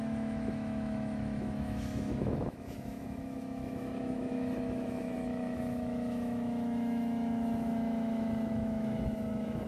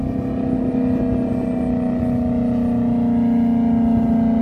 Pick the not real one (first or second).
first